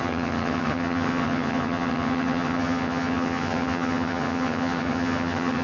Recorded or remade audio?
remade